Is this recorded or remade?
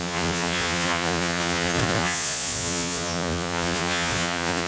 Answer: remade